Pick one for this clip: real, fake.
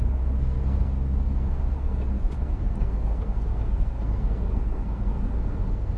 fake